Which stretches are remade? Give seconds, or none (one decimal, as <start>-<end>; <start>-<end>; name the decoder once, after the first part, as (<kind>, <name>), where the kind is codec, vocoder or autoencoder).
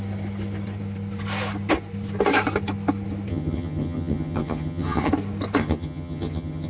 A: 3.3-5.1 (vocoder, HiFi-GAN); 5.6-6.7